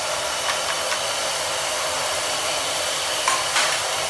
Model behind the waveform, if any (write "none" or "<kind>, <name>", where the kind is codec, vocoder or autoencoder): none